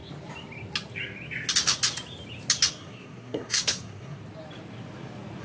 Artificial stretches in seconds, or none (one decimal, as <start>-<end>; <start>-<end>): 2.7-4.2